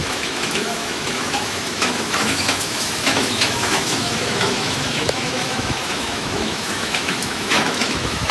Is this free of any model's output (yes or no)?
no